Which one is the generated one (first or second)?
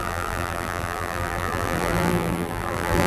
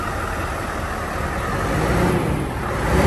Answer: first